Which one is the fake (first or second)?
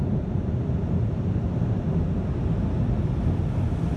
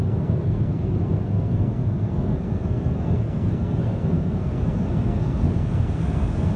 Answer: second